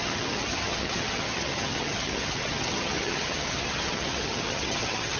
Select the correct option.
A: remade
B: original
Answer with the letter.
A